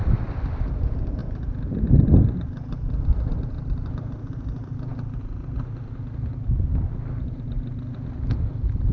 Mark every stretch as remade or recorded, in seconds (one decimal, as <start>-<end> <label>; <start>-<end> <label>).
0.0-8.9 recorded